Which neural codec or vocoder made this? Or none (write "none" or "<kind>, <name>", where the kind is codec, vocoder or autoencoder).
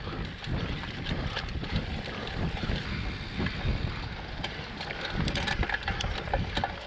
none